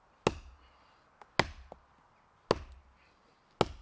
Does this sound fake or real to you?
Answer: real